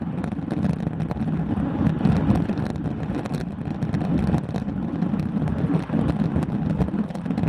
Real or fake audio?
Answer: real